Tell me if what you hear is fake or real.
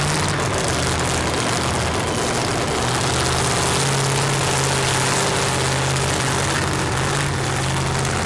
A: real